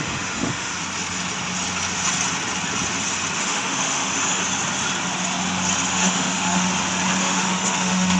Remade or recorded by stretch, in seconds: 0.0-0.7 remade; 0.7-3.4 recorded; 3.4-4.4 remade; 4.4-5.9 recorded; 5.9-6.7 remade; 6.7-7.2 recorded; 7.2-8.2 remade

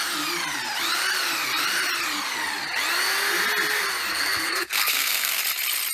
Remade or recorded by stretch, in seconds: 0.0-4.1 recorded; 4.1-5.4 remade; 5.4-5.9 recorded

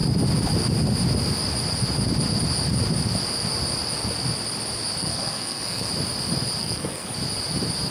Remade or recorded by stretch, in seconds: 0.0-5.0 recorded; 5.0-5.9 remade; 5.9-6.6 recorded; 6.6-7.1 remade; 7.1-7.9 recorded

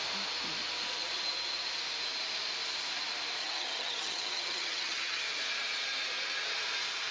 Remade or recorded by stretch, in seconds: 0.0-3.4 recorded; 3.4-5.2 remade; 5.2-7.1 recorded

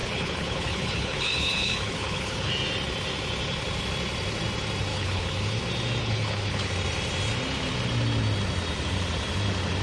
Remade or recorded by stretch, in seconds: 0.0-2.5 remade; 2.5-4.9 recorded; 4.9-5.6 remade; 5.6-6.0 recorded; 6.0-6.7 remade; 6.7-9.8 recorded